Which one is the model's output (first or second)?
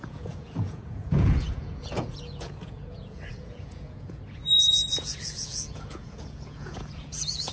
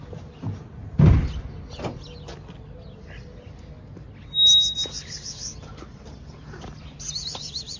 first